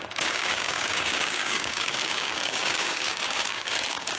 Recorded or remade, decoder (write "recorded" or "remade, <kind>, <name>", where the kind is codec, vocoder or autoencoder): remade, codec, DAC